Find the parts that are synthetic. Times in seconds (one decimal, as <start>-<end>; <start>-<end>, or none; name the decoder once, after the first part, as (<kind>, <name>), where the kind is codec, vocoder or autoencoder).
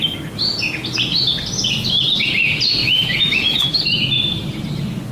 2.8-4.0 (autoencoder, DAC-VAE)